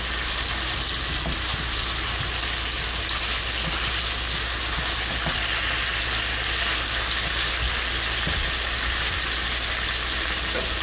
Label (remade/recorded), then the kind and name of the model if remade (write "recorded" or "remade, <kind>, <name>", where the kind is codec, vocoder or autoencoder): recorded